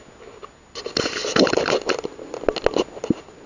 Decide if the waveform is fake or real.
real